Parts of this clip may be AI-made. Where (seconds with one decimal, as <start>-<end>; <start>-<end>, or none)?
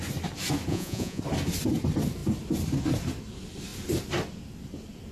0.7-1.2